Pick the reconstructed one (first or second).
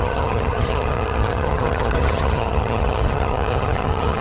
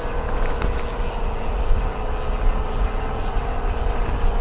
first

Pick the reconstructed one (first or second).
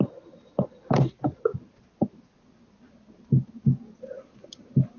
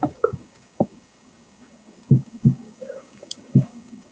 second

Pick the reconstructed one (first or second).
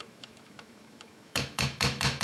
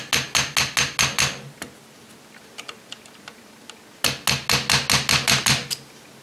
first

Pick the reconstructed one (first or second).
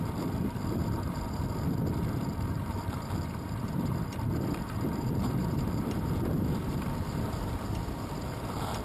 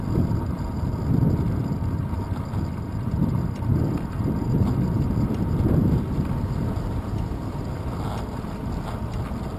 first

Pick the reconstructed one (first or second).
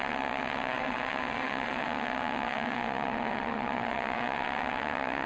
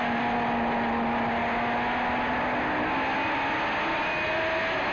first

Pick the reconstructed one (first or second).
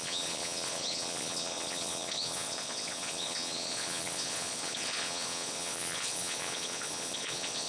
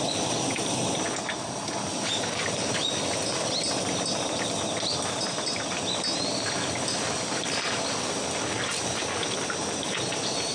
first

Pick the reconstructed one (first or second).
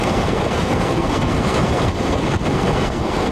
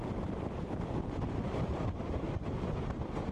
first